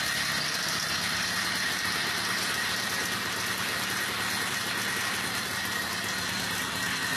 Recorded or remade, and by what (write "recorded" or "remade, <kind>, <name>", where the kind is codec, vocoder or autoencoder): recorded